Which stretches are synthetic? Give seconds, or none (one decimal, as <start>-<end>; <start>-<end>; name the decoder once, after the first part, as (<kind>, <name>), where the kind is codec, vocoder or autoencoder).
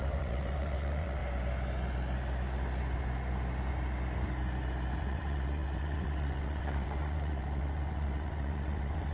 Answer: 0.0-1.2 (vocoder, WaveNeXt); 5.0-9.1